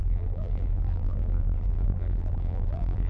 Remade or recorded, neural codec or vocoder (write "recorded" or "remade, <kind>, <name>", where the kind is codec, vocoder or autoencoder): remade, vocoder, BigVGAN v2